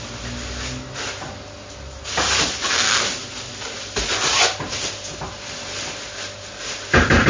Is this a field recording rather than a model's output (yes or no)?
yes